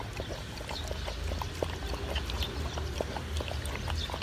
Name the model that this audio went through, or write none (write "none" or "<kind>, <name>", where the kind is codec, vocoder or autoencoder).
none